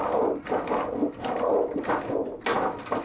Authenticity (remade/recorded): recorded